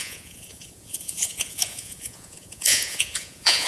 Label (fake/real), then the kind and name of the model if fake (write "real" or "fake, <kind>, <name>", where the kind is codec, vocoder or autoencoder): fake, vocoder, Vocos